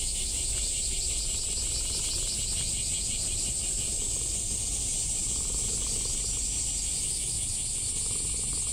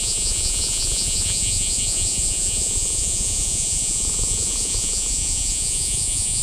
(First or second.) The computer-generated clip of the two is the second